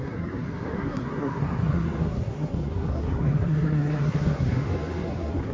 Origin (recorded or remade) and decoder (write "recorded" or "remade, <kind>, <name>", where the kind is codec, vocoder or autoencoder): remade, codec, SNAC